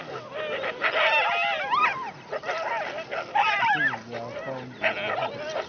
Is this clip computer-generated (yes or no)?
no